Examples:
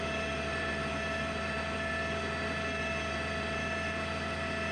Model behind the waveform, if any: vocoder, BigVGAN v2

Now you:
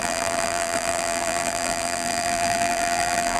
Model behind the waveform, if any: vocoder, BigVGAN v2